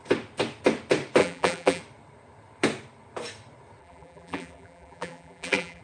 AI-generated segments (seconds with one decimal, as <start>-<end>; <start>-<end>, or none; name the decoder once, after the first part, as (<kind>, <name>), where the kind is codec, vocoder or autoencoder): 1.2-1.8 (vocoder, BigVGAN v2); 3.8-5.8